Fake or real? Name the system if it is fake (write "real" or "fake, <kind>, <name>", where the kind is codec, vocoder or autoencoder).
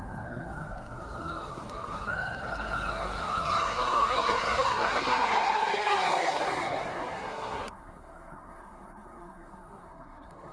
fake, codec, SNAC